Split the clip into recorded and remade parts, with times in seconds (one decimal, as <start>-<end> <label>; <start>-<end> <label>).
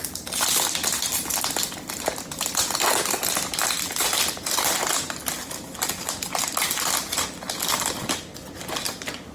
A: 0.0-9.3 recorded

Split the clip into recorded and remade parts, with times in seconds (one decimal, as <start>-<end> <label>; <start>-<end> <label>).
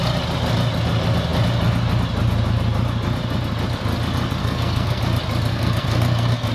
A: 0.0-4.4 recorded; 4.4-5.0 remade; 5.0-5.5 recorded; 5.5-6.5 remade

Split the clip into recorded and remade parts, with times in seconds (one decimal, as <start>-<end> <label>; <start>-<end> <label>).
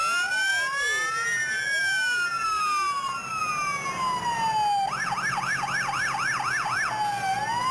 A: 0.0-7.7 recorded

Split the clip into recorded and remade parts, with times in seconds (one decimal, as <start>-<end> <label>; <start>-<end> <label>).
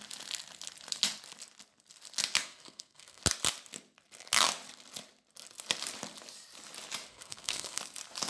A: 0.0-2.4 recorded; 2.4-3.2 remade; 3.2-7.1 recorded; 7.1-7.8 remade; 7.8-8.3 recorded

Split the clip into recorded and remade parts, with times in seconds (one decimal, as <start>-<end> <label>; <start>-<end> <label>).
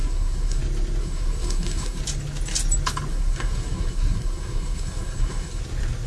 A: 0.0-0.6 remade; 0.6-1.0 recorded; 1.0-2.0 remade; 2.0-3.1 recorded; 3.1-5.6 remade; 5.6-6.1 recorded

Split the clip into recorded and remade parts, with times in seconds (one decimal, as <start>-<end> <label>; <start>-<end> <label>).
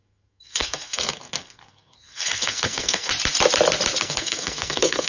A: 0.0-3.1 remade; 3.1-4.0 recorded; 4.0-5.1 remade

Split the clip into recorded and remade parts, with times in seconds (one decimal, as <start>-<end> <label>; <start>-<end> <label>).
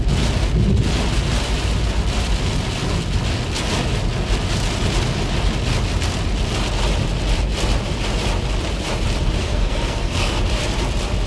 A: 0.0-9.4 recorded; 9.4-10.4 remade; 10.4-11.3 recorded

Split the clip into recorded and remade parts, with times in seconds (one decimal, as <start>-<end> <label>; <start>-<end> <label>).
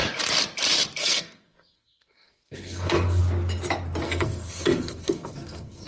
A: 0.0-1.0 recorded; 1.0-3.2 remade; 3.2-4.0 recorded; 4.0-5.9 remade